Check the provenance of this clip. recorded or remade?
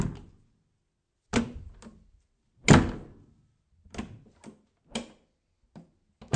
recorded